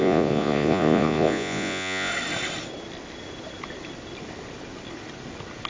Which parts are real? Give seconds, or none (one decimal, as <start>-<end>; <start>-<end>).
2.1-5.7

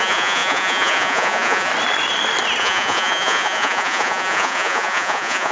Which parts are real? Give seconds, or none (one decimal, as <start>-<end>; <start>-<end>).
1.7-2.6